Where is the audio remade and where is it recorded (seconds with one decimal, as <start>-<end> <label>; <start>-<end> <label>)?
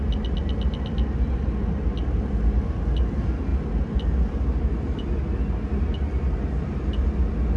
0.0-7.6 recorded